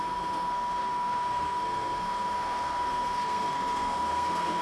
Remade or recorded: remade